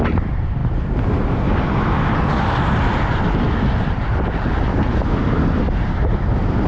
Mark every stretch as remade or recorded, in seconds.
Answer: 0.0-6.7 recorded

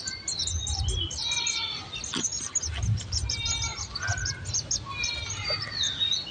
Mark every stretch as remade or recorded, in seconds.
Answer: 0.0-6.3 recorded

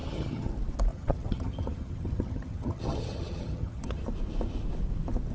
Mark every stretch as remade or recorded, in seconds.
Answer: 0.0-0.5 remade; 0.5-0.9 recorded; 0.9-4.0 remade; 4.0-5.3 recorded

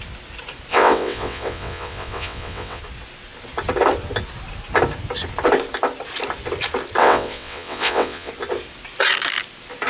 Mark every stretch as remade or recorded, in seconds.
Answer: 0.0-0.7 recorded; 0.7-2.8 remade; 2.8-7.0 recorded; 7.0-8.3 remade; 8.3-9.9 recorded

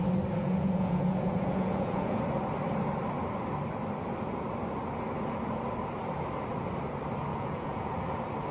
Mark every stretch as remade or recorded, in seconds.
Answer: 0.0-0.4 recorded; 0.4-2.2 remade; 2.2-7.3 recorded; 7.3-7.9 remade; 7.9-8.5 recorded